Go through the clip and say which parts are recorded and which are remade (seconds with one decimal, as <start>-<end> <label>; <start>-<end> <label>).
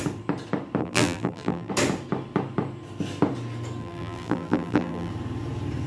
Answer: 0.0-0.8 recorded; 0.8-1.7 remade; 1.7-3.8 recorded; 3.8-5.1 remade; 5.1-5.9 recorded